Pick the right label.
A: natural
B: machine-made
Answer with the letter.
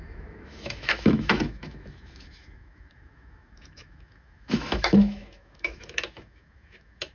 B